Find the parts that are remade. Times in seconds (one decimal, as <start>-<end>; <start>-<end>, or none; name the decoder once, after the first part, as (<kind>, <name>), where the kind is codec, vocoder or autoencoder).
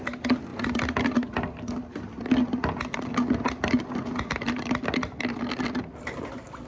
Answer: none